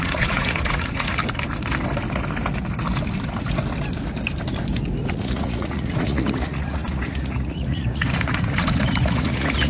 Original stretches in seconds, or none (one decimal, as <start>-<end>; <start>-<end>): 1.2-5.1